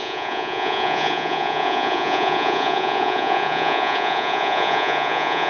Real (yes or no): no